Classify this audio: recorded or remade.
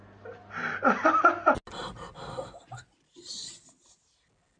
recorded